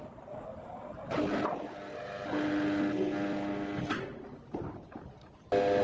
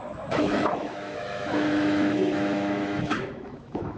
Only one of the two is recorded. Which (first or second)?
first